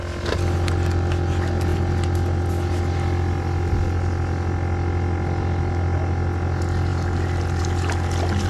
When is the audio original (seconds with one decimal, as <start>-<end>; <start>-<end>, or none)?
0.0-8.5